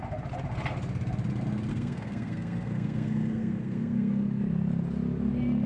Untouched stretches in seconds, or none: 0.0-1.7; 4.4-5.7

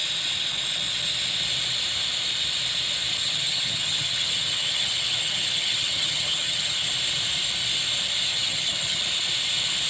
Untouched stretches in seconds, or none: 0.0-3.2; 6.9-8.3; 9.0-9.9

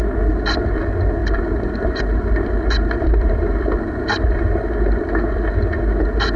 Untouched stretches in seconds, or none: 0.0-1.2; 4.4-6.4

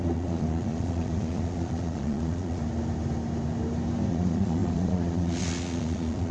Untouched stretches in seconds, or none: 2.6-4.1

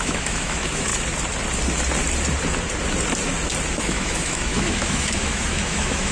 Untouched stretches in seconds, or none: 0.9-3.8